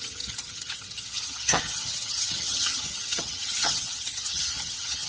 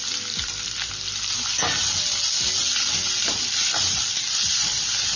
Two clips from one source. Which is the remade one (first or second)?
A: first